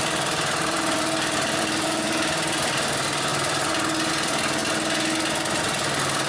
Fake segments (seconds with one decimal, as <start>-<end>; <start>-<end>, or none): 0.0-3.3; 4.1-4.6; 5.6-6.3